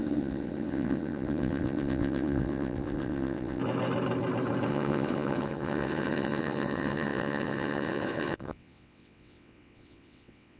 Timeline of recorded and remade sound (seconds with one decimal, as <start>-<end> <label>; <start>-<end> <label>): 0.0-3.6 remade; 3.6-4.7 recorded; 4.7-10.6 remade